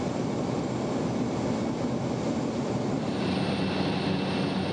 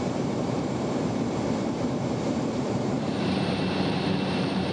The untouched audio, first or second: first